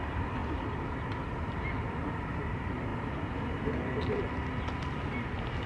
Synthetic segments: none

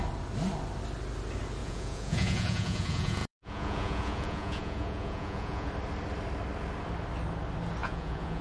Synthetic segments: 1.6-5.7 (vocoder, Vocos); 7.8-8.4